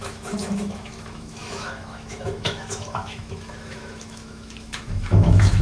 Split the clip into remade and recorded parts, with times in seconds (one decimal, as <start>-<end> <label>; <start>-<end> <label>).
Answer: 0.0-5.6 remade